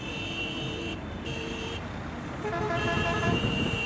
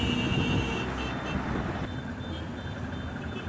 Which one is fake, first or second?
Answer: first